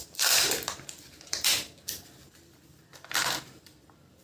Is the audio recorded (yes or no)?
no